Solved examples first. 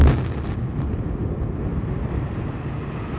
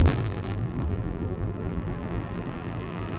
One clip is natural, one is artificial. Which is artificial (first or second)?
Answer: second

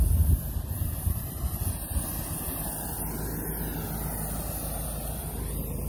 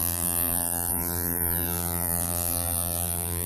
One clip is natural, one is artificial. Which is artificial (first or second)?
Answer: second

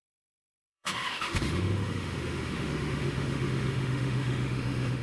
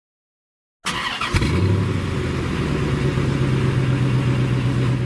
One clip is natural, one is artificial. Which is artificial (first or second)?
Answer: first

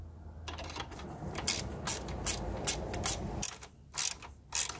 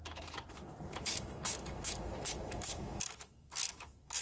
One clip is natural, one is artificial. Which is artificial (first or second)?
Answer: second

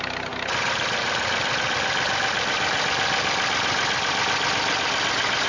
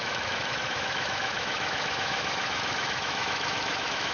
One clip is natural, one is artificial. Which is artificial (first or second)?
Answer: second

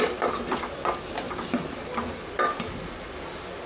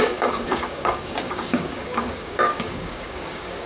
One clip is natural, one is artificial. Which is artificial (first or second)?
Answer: second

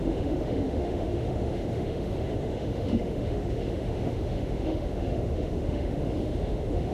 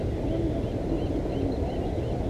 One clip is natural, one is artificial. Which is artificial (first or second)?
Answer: first